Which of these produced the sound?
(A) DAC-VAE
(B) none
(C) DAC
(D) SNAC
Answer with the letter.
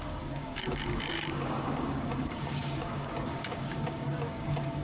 C